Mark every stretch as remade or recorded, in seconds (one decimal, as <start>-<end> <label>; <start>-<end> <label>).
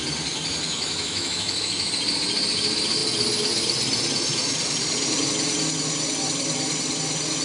0.0-0.7 recorded; 0.7-1.9 remade; 1.9-7.4 recorded